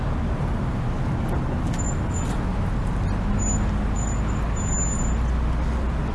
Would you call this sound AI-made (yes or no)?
no